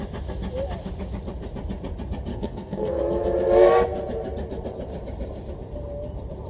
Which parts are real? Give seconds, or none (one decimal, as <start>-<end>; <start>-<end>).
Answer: 0.0-2.3; 3.0-6.5